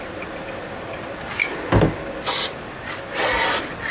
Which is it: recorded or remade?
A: recorded